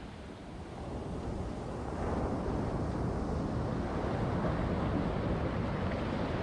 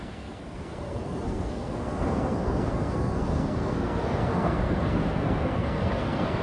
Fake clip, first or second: second